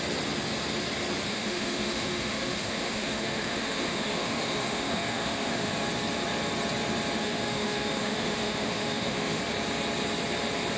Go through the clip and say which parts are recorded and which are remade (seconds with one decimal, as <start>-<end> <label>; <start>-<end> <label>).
0.0-1.3 recorded; 1.3-5.7 remade; 5.7-7.2 recorded; 7.2-9.4 remade; 9.4-10.8 recorded